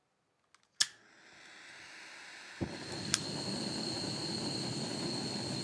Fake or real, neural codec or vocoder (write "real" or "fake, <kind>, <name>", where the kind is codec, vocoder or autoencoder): real